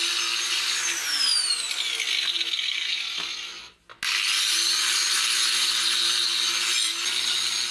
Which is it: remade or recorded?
recorded